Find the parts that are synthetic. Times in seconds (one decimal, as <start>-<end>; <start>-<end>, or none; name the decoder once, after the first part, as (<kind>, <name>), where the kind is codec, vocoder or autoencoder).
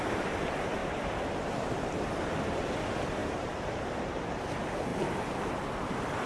0.8-1.7 (vocoder, BigVGAN v2); 3.2-4.2; 4.9-5.4